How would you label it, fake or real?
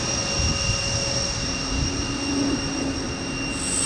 real